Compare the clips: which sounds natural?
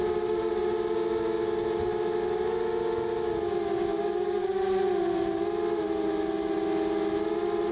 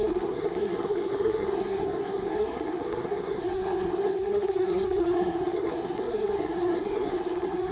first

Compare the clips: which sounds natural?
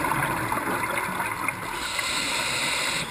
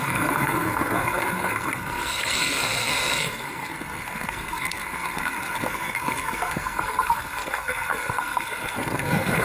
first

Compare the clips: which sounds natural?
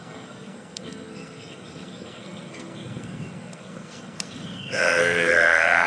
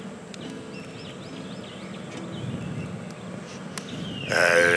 second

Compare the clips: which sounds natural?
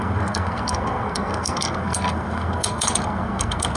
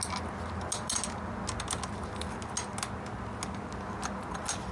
second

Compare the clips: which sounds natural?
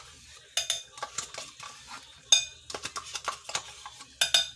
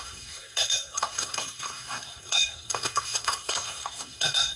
first